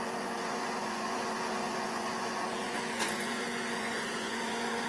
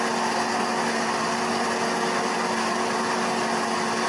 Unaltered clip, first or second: second